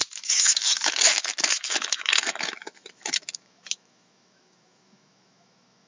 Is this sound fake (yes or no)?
yes